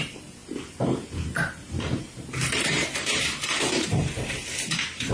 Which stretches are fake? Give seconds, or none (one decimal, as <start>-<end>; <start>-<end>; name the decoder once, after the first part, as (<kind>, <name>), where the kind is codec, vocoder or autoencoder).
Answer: 0.0-5.1 (vocoder, BigVGAN v2)